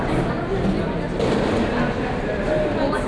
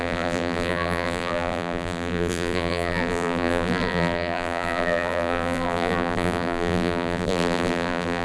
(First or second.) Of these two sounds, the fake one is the second